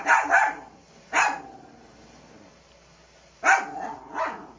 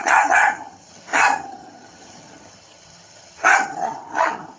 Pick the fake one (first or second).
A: second